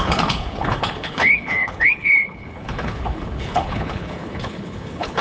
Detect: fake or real fake